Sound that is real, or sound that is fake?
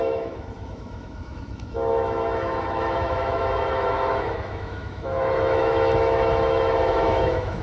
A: fake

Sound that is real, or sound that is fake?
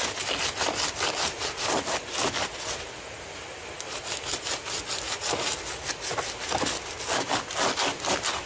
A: real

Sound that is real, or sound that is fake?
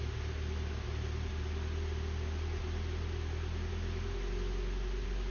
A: real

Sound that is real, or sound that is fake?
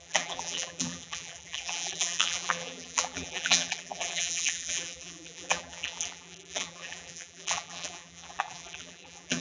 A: fake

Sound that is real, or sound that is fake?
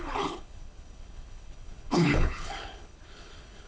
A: fake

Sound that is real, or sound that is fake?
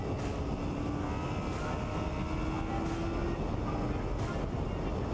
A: real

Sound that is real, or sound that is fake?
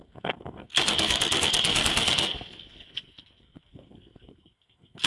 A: fake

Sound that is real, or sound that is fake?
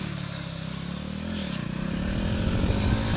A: real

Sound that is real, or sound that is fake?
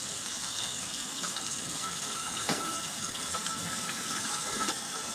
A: fake